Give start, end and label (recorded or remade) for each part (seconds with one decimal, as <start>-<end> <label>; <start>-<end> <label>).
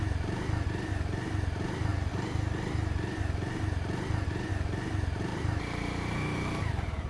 0.0-5.3 recorded; 5.3-7.1 remade